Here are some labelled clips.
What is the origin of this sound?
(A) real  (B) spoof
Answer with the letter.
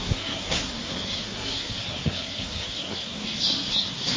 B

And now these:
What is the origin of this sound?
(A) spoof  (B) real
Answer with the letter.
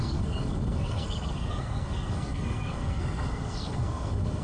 A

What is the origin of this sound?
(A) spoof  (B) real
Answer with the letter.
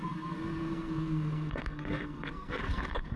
A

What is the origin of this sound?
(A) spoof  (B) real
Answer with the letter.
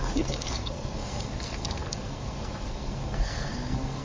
A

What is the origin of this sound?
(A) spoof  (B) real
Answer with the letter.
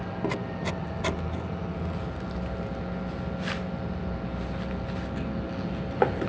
B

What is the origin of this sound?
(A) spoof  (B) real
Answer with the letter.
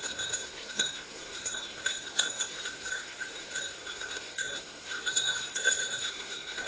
A